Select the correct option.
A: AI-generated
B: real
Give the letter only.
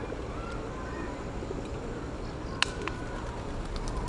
B